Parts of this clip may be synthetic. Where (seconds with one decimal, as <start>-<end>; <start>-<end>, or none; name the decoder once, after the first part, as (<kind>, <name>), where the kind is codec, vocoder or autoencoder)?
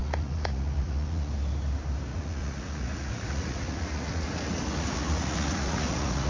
0.0-1.3 (vocoder, Vocos); 2.1-6.3